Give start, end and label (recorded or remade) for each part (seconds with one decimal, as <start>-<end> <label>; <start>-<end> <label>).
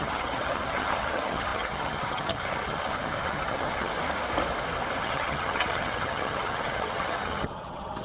0.0-3.9 remade; 3.9-5.0 recorded; 5.0-8.0 remade